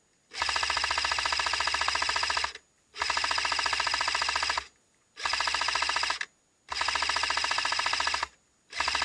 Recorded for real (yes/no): yes